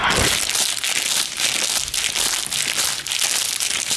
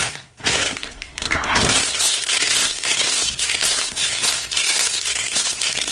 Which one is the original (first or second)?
first